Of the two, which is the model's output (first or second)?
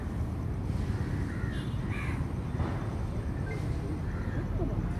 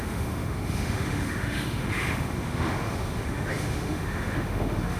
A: second